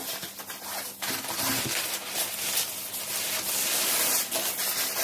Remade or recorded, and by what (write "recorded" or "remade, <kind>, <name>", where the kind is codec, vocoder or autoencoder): recorded